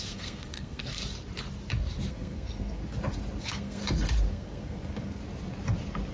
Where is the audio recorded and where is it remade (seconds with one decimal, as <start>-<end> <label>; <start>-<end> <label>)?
0.0-1.0 remade; 1.0-2.1 recorded; 2.1-2.8 remade; 2.8-3.4 recorded; 3.4-3.8 remade; 3.8-4.3 recorded; 4.3-5.2 remade; 5.2-6.1 recorded